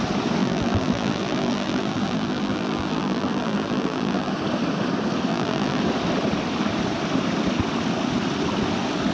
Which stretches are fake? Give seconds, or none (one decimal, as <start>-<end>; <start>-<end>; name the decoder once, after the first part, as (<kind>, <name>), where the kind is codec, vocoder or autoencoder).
0.4-4.3 (vocoder, BigVGAN v2); 5.3-5.8